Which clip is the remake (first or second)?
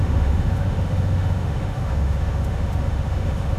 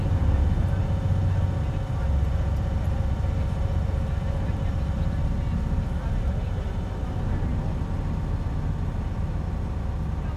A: first